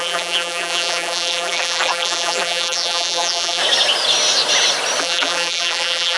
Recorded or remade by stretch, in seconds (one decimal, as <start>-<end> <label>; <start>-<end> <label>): 0.0-3.6 remade; 3.6-5.0 recorded; 5.0-6.2 remade